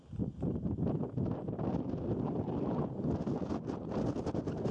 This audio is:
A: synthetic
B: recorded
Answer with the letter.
B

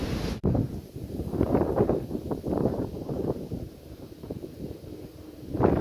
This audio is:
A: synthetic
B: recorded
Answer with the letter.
A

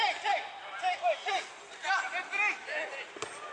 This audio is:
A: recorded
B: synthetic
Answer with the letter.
A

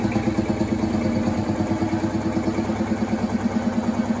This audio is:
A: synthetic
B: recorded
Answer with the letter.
B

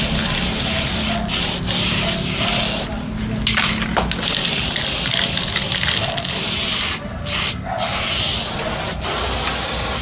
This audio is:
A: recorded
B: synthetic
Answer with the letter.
A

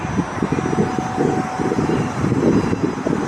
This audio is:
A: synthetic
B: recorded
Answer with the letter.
B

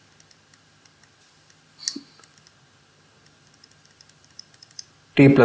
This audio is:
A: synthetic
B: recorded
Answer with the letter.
B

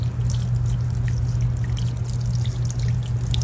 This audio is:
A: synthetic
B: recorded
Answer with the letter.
B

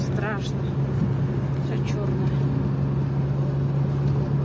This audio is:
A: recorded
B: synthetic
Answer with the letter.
A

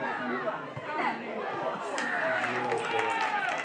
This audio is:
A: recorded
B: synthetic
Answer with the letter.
A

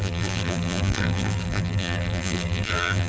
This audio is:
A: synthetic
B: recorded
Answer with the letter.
A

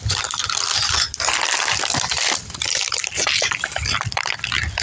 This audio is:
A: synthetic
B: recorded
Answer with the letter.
A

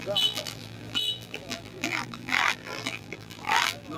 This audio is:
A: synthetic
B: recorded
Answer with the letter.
A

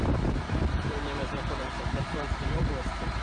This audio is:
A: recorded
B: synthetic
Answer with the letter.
B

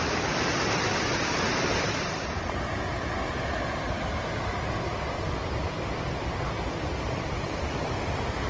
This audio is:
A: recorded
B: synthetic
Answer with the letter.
B